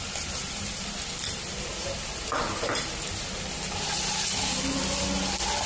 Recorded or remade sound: recorded